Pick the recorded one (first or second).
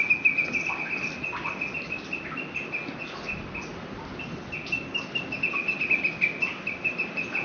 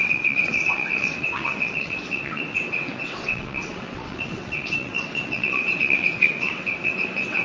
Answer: first